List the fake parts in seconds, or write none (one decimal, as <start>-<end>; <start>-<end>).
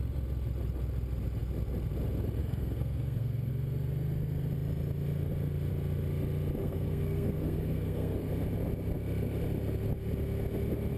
2.4-3.5; 6.6-8.3